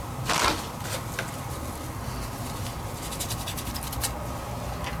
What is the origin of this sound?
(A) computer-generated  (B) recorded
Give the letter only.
B